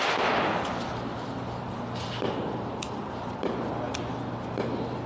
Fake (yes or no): no